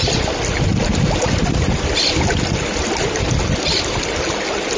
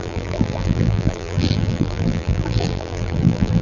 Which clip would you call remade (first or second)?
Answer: second